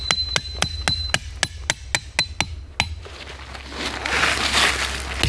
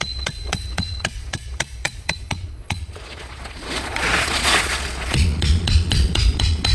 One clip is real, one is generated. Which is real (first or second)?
first